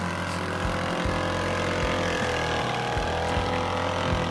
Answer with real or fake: real